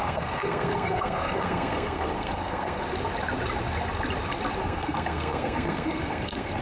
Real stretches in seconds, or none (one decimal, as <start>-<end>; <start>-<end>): 2.8-4.6